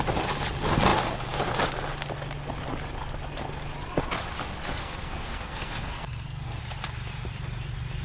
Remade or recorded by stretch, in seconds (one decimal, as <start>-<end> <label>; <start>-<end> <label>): 0.0-4.8 recorded; 4.8-6.6 remade; 6.6-8.0 recorded